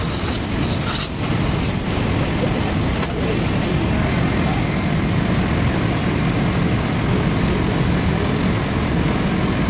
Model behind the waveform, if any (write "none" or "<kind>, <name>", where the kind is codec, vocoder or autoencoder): none